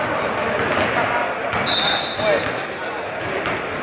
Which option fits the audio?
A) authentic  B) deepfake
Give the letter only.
A